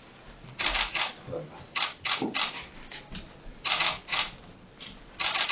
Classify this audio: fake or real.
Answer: real